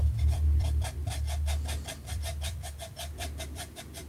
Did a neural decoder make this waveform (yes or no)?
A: yes